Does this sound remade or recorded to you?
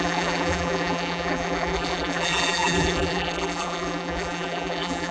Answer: remade